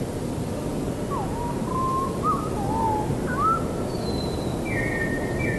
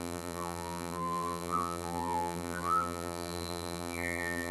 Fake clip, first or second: second